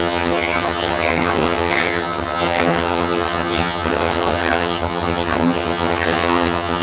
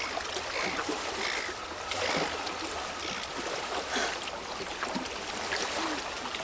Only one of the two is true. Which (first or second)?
second